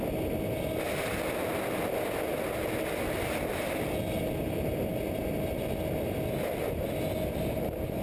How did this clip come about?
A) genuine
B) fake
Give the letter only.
A